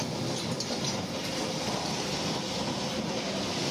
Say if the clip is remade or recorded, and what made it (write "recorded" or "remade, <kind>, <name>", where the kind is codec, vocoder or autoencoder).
recorded